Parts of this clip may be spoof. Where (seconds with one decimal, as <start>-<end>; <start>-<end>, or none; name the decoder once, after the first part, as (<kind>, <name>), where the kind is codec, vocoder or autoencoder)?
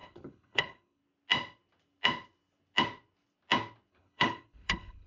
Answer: 0.0-1.0 (codec, HILCodec); 3.9-5.1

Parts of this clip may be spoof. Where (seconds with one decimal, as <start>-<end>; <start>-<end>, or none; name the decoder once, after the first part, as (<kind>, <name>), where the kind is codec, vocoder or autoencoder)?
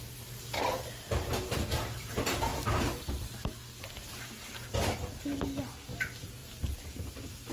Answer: 2.5-3.3 (vocoder, BigVGAN v2); 6.4-7.1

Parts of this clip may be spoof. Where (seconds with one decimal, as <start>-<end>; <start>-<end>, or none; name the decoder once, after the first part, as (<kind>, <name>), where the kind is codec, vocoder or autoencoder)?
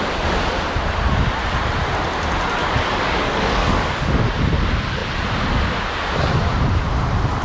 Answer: 2.6-4.2 (codec, DAC)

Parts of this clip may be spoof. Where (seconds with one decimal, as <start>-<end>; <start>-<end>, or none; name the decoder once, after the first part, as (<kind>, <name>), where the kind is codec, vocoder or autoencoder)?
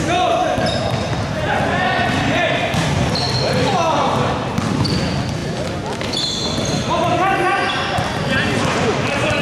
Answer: none